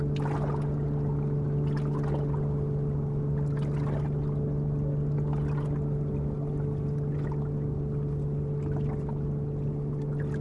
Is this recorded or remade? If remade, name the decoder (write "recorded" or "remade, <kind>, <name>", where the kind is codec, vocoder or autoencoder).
recorded